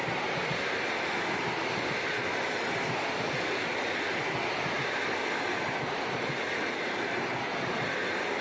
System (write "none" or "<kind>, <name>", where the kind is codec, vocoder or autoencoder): none